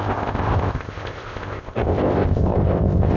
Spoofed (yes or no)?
yes